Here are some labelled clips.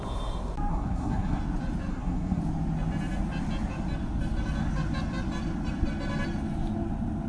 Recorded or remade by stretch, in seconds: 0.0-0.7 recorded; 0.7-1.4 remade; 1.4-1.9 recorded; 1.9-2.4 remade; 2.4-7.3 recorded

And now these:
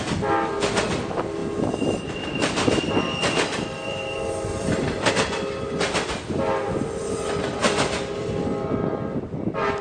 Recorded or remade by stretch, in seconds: 0.0-1.4 recorded; 1.4-5.1 remade; 5.1-7.6 recorded; 7.6-8.3 remade; 8.3-9.8 recorded

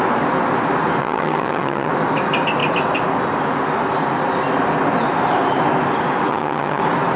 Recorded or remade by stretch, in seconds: 0.0-1.0 recorded; 1.0-1.9 remade; 1.9-6.3 recorded; 6.3-6.8 remade; 6.8-7.2 recorded